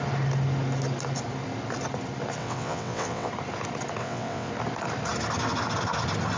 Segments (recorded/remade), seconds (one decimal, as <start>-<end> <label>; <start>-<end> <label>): 0.0-2.4 recorded; 2.4-3.3 remade; 3.3-4.0 recorded; 4.0-4.5 remade; 4.5-6.4 recorded